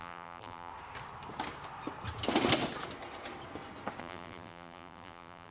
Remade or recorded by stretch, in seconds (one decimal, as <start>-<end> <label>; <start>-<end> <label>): 0.0-0.7 remade; 0.7-4.0 recorded; 4.0-5.5 remade